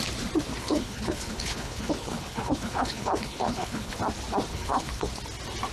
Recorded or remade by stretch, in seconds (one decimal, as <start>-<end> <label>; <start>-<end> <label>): 0.0-0.6 recorded; 0.6-4.0 remade; 4.0-4.5 recorded; 4.5-5.1 remade; 5.1-5.7 recorded